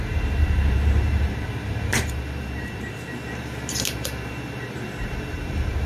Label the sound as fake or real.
fake